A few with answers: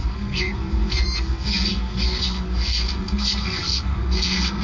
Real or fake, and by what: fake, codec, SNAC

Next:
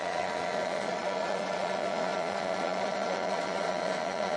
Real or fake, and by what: fake, vocoder, Vocos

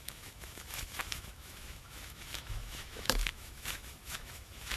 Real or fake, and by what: fake, autoencoder, DAC-VAE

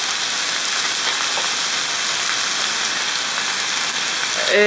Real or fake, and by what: real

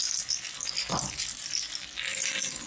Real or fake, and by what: real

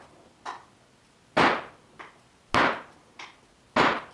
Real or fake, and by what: real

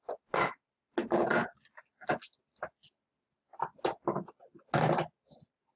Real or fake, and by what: real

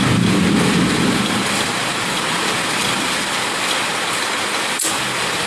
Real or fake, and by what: real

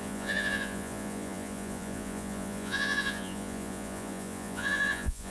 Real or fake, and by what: fake, vocoder, Vocos